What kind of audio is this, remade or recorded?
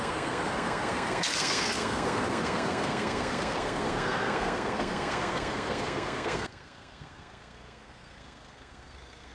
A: remade